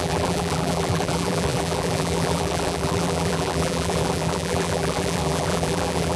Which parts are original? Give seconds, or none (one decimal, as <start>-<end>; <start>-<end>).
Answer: none